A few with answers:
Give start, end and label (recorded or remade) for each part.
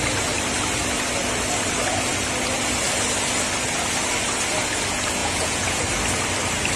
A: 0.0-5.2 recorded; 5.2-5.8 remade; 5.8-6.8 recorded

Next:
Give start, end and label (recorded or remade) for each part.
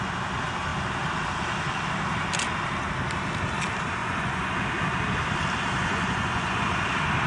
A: 0.0-4.0 recorded; 4.0-4.5 remade; 4.5-5.8 recorded; 5.8-6.7 remade; 6.7-7.3 recorded